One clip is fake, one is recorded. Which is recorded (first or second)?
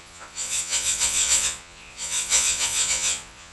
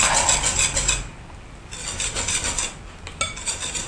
second